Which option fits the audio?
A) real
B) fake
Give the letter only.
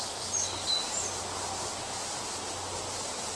A